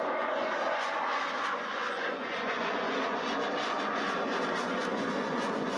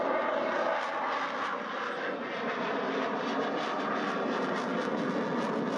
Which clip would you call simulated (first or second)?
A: first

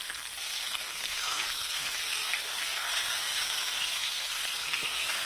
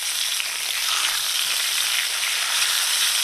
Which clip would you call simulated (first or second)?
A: first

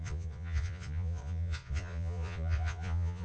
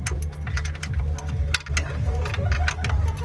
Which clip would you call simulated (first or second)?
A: first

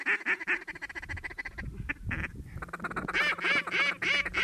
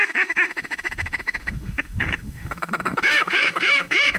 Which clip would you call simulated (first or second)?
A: second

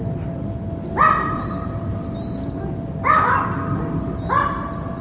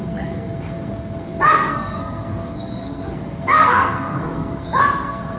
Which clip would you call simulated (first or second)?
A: second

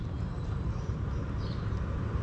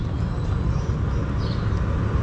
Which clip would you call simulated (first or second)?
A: first